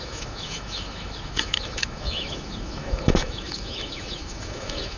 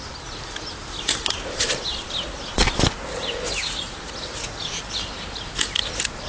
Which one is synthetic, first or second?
first